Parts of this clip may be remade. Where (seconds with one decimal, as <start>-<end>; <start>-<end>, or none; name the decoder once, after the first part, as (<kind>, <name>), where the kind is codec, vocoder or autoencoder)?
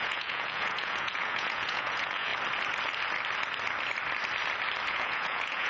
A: 0.0-2.3 (vocoder, Vocos); 4.9-5.7